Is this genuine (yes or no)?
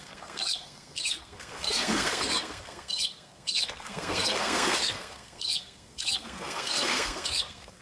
no